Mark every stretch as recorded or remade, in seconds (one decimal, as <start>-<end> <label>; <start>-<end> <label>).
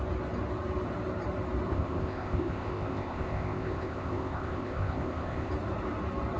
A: 0.0-1.7 recorded; 1.7-5.5 remade; 5.5-6.4 recorded